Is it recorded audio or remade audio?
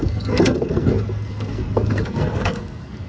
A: remade